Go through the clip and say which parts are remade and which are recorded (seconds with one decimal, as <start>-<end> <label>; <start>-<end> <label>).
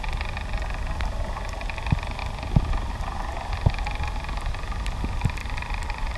0.0-5.4 recorded; 5.4-6.2 remade